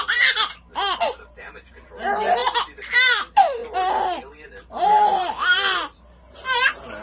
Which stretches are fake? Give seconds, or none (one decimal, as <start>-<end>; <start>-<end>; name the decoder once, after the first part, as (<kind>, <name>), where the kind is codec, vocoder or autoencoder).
0.0-0.7 (vocoder, BigVGAN v2); 1.4-2.4; 3.2-7.0